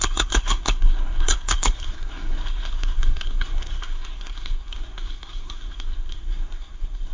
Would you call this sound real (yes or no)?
no